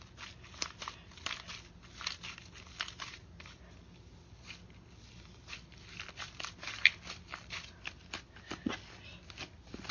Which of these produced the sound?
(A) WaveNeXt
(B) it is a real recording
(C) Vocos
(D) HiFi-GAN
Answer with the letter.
B